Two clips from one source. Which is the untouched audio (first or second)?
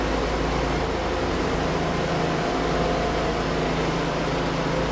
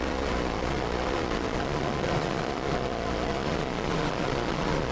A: first